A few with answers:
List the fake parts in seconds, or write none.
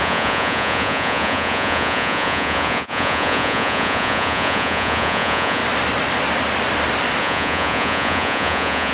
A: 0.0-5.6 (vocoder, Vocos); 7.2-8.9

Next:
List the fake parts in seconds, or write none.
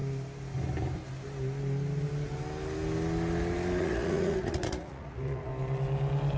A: 3.8-5.5 (vocoder, Vocos)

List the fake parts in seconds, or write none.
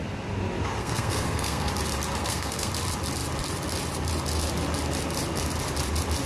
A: 0.8-1.7 (codec, SNAC); 2.2-2.7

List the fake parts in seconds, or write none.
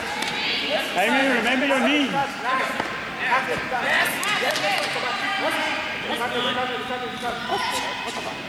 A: 1.2-1.7 (vocoder, BigVGAN v2)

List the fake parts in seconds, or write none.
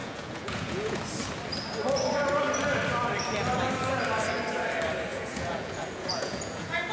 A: 0.0-1.0 (vocoder, Vocos); 5.1-6.9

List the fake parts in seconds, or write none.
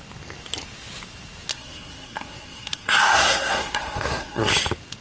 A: 1.5-4.5 (codec, SNAC)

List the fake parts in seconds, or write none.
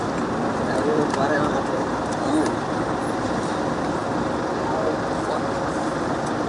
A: none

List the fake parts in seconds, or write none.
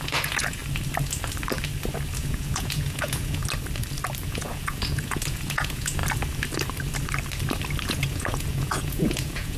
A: 0.0-0.6 (vocoder, Vocos); 2.2-3.4; 4.3-6.0; 7.9-9.6